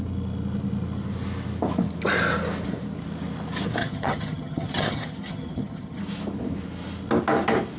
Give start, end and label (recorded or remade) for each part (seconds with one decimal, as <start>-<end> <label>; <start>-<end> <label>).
0.0-3.8 recorded; 3.8-6.0 remade; 6.0-7.8 recorded